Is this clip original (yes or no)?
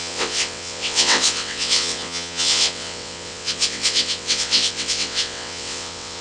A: no